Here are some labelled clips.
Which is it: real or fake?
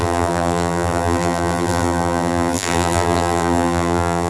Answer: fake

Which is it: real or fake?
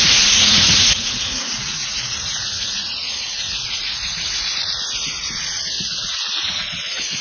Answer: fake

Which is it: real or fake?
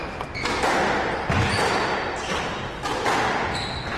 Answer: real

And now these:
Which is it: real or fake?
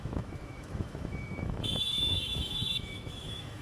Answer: fake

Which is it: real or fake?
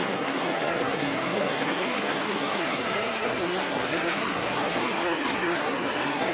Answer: fake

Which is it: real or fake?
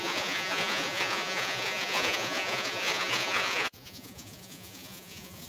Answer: fake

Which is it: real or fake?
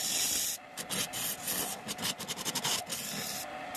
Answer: real